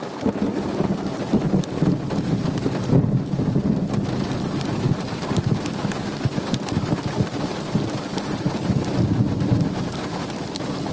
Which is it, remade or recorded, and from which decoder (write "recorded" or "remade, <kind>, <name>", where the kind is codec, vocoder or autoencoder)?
recorded